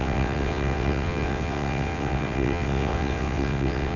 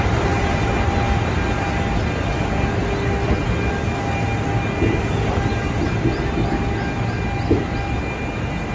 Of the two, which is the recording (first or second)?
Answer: second